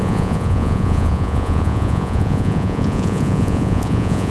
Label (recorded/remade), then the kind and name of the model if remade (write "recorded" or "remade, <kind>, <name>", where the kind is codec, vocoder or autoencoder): remade, vocoder, Vocos